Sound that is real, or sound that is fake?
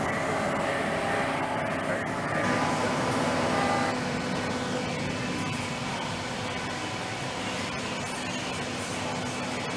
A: real